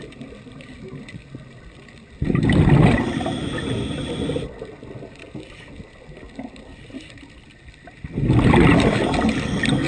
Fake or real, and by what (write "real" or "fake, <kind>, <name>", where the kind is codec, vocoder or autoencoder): real